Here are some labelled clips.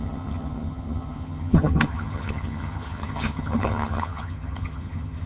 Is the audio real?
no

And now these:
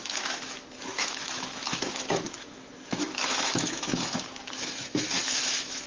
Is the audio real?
no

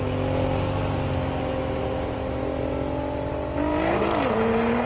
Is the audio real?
yes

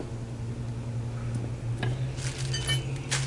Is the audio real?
yes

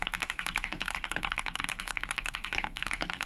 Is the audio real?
no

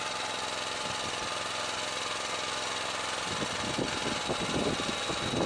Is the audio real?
yes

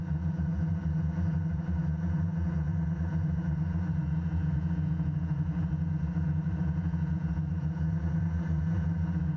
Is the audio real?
no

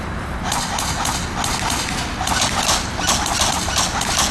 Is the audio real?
yes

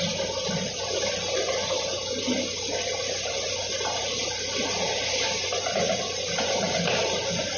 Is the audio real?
yes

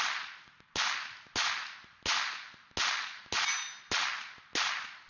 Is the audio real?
yes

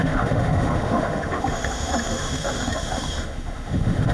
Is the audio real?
no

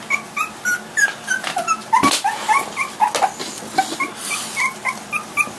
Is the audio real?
yes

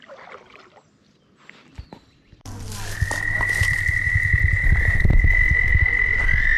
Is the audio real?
no